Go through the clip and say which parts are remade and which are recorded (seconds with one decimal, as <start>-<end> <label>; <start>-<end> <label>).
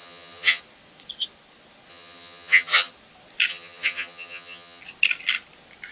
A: 0.0-0.6 remade; 0.6-1.9 recorded; 1.9-2.9 remade; 2.9-3.5 recorded; 3.5-4.8 remade; 4.8-5.9 recorded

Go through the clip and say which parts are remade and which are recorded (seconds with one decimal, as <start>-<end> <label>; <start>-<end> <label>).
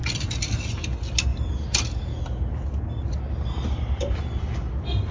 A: 0.0-5.1 recorded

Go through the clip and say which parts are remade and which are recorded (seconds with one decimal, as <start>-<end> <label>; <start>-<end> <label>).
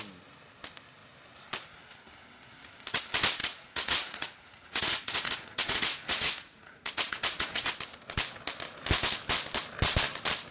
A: 0.0-3.4 recorded; 3.4-7.7 remade; 7.7-10.5 recorded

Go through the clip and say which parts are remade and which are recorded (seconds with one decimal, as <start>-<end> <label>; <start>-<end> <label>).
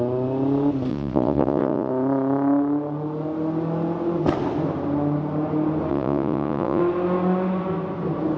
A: 0.0-0.9 recorded; 0.9-1.9 remade; 1.9-5.9 recorded; 5.9-6.8 remade; 6.8-8.4 recorded